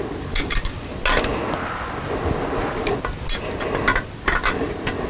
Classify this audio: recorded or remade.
recorded